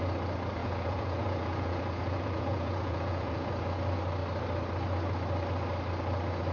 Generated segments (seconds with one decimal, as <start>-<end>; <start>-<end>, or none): 0.6-3.5